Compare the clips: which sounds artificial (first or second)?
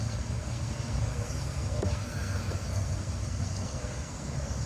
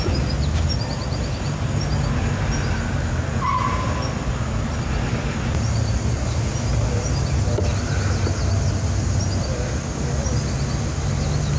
first